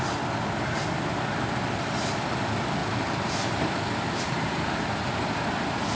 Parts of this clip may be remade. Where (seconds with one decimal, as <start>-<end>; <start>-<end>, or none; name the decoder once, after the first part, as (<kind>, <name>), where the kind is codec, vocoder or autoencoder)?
2.8-5.1 (vocoder, BigVGAN v2)